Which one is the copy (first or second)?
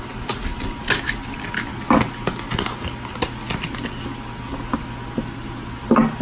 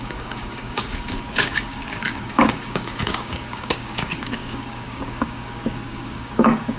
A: second